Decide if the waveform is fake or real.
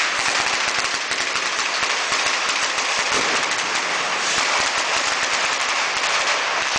real